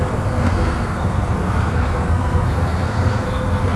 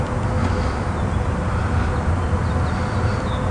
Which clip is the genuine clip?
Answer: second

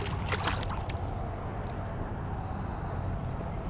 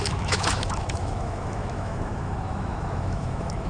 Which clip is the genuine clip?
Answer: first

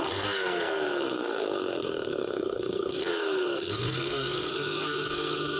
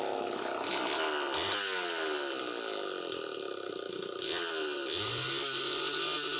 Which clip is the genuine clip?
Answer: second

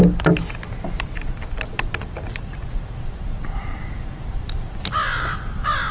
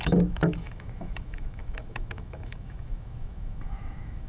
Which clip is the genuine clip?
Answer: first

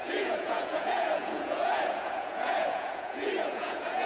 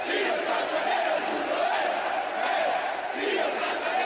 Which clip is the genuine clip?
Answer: second